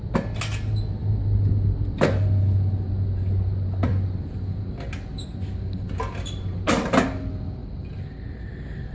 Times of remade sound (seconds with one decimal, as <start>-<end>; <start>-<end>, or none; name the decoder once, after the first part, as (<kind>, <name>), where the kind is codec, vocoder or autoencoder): 1.0-4.6 (vocoder, BigVGAN v2); 7.6-8.4

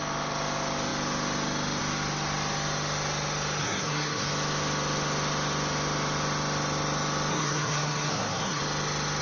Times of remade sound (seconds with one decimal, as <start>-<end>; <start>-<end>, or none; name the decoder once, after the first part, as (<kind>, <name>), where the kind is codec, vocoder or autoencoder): 3.6-4.3 (codec, SNAC); 7.3-8.6

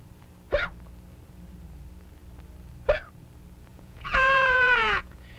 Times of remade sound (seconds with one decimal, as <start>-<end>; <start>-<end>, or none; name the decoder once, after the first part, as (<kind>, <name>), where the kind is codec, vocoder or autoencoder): 3.7-5.4 (vocoder, Vocos)

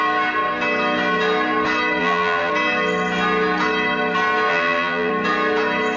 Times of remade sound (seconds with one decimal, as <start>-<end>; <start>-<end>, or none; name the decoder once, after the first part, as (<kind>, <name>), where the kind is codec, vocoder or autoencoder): 2.0-2.5 (vocoder, BigVGAN v2); 4.5-5.1

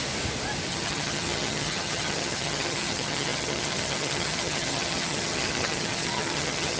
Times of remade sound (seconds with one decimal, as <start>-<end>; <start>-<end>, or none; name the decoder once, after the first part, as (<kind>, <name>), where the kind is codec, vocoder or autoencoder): 0.7-6.8 (vocoder, HiFi-GAN)

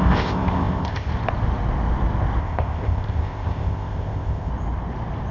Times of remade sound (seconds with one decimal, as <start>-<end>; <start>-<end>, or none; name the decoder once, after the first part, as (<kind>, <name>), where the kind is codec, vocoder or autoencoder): 0.0-1.1 (codec, ZipCodec); 2.4-4.5

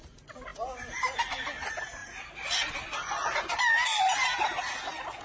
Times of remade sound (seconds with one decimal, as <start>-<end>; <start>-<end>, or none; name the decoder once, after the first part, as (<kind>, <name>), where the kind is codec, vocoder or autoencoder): none

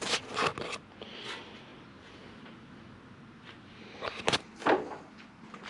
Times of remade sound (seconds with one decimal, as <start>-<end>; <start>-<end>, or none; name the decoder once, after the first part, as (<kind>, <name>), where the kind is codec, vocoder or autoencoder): none